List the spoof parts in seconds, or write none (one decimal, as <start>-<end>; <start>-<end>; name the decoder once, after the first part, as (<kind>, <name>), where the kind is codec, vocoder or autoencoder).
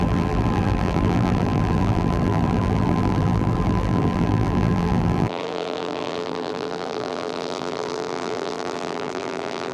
0.0-9.7 (vocoder, BigVGAN v2)